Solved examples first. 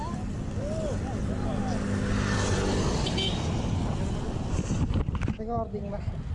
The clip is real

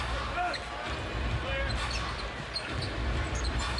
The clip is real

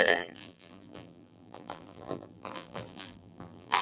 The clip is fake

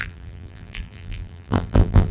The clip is fake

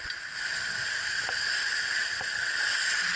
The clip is real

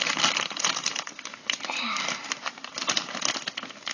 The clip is real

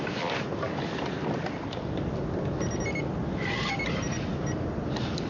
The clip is real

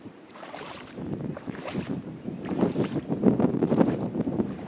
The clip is fake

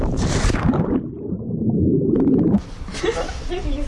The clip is fake